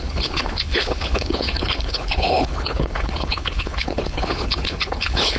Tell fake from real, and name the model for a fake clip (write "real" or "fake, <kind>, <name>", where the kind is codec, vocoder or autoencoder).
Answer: fake, codec, HILCodec